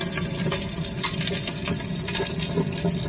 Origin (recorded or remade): recorded